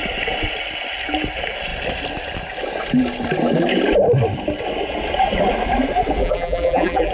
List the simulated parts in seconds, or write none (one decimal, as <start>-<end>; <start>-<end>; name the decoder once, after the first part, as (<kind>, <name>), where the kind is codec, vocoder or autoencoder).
6.2-7.1 (vocoder, BigVGAN v2)